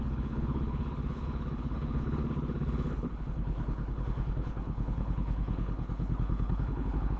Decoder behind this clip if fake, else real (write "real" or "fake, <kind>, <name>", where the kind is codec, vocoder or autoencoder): fake, codec, HILCodec